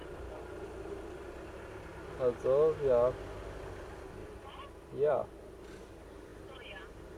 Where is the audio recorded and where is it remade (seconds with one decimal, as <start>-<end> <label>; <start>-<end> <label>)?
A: 0.0-4.2 recorded; 4.2-5.6 remade; 5.6-6.3 recorded; 6.3-7.2 remade

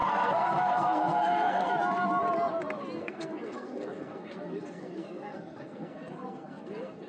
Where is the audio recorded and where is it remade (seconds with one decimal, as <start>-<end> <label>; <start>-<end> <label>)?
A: 0.0-1.7 remade; 1.7-3.0 recorded; 3.0-7.1 remade